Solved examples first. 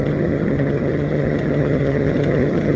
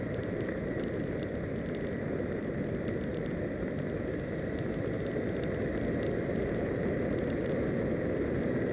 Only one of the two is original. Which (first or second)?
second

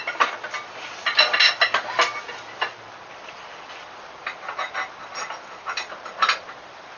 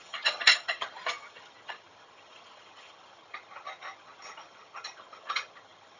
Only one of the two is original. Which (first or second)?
first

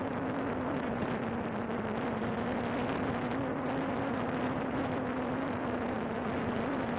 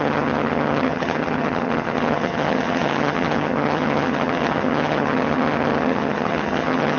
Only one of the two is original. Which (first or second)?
first